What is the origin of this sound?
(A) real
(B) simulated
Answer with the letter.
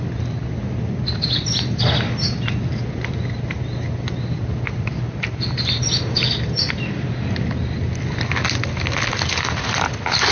A